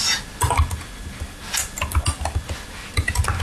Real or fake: real